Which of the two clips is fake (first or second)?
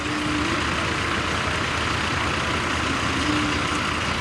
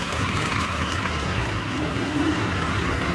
second